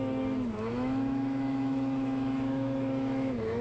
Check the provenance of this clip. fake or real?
fake